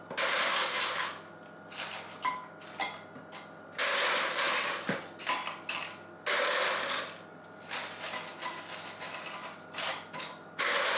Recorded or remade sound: recorded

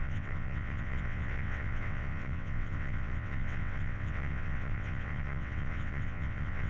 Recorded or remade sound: remade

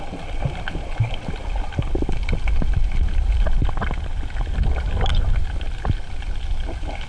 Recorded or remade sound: recorded